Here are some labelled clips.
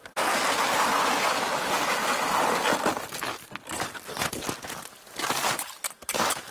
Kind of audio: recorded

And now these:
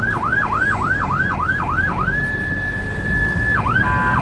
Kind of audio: recorded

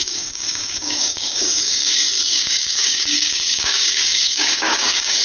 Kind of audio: remade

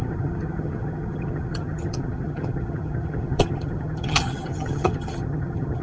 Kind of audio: remade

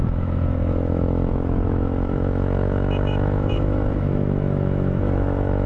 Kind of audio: remade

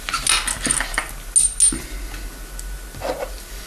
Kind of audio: recorded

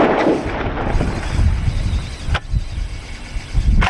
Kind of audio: recorded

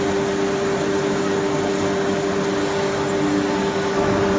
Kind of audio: recorded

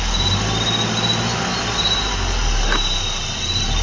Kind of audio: recorded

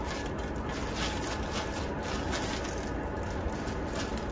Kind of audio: recorded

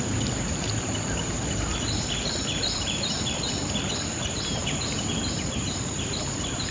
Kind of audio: remade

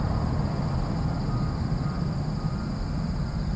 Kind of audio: recorded